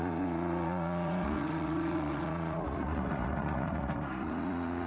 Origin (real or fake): fake